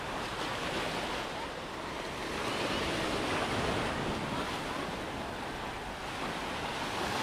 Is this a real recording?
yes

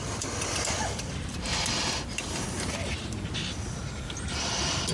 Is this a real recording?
yes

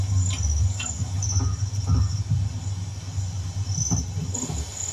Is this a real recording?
yes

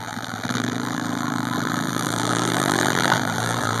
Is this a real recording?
no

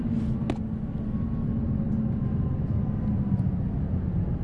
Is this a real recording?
yes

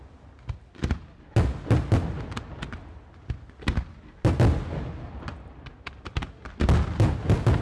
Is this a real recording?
yes